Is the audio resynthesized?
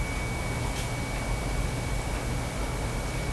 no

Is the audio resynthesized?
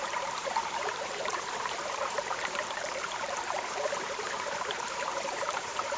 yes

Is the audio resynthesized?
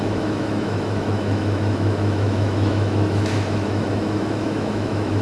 yes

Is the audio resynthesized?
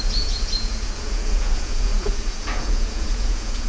yes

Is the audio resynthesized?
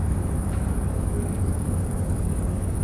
yes